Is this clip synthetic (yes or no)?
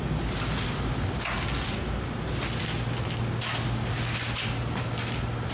no